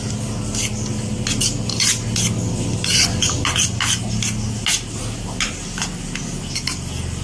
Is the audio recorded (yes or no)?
yes